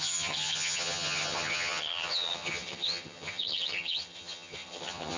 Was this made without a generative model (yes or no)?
no